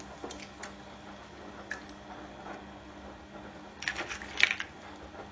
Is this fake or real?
real